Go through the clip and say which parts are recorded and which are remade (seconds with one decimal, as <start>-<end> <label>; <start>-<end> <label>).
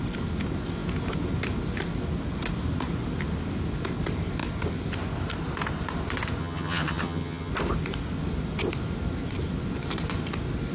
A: 0.0-6.4 recorded; 6.4-7.5 remade; 7.5-10.7 recorded